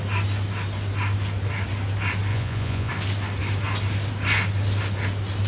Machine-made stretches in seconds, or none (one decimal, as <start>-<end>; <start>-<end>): 2.3-2.9